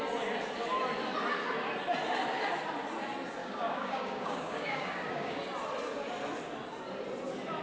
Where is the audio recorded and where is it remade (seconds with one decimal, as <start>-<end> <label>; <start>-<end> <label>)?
0.0-3.4 recorded; 3.4-5.4 remade; 5.4-7.6 recorded